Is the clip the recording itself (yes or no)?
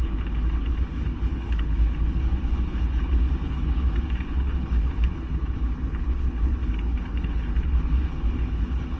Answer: no